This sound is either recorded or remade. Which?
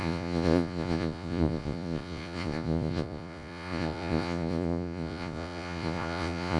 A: remade